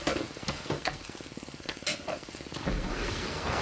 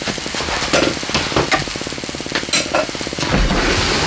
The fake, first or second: first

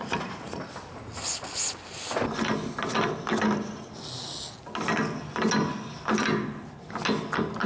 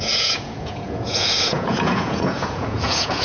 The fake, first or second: second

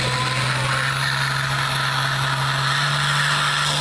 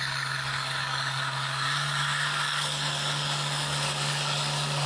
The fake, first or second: second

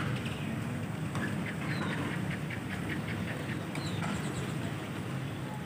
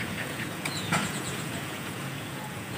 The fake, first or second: second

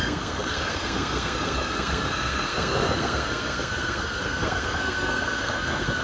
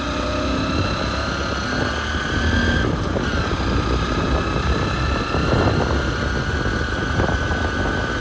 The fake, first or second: first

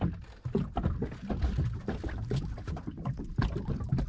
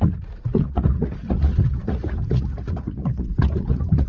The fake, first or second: second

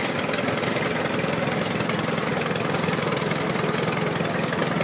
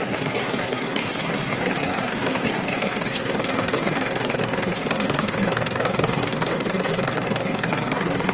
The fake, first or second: second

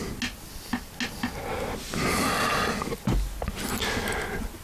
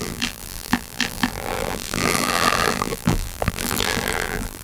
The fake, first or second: second